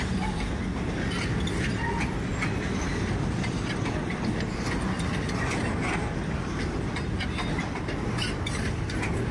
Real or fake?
real